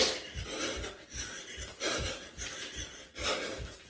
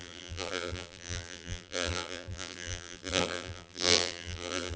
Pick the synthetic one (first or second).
second